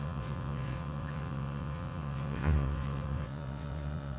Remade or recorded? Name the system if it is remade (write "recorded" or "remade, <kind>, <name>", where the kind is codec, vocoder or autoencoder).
remade, vocoder, WaveNeXt